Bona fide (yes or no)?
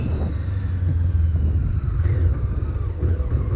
yes